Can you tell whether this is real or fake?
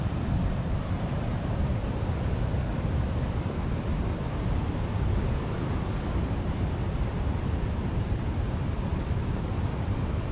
fake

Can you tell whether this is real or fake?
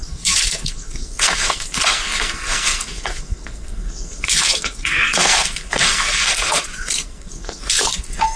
fake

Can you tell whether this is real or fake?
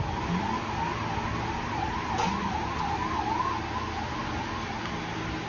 real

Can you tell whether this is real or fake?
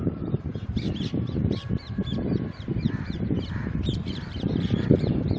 fake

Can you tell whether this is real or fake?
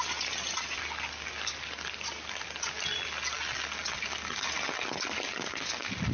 real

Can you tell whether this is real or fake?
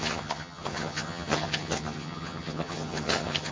fake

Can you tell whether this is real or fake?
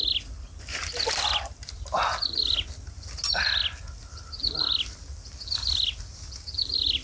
real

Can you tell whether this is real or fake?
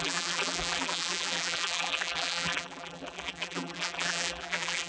fake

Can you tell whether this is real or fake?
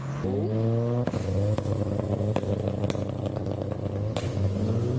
real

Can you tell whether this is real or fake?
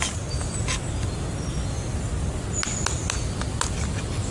real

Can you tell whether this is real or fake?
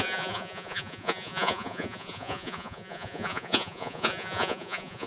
fake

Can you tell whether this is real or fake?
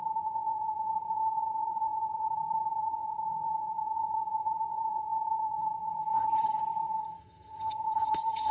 fake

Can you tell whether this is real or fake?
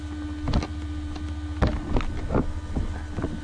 real